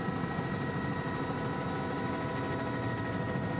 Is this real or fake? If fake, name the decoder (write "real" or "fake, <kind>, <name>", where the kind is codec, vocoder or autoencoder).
real